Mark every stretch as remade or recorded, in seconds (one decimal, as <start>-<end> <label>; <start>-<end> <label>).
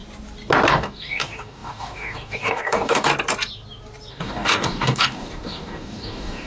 0.0-0.7 recorded; 0.7-3.1 remade; 3.1-4.1 recorded; 4.1-6.5 remade